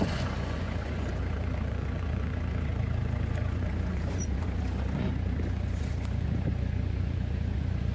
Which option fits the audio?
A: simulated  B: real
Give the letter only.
A